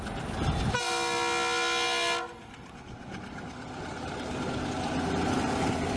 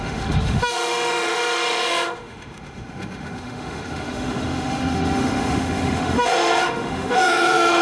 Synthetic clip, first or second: second